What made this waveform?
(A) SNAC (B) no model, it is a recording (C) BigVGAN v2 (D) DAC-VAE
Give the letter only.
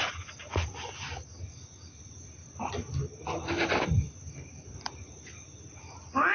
C